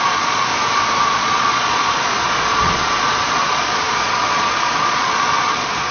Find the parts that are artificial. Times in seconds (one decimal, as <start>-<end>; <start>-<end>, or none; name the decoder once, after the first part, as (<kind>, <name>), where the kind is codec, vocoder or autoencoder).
0.0-0.5 (vocoder, Vocos); 1.0-5.9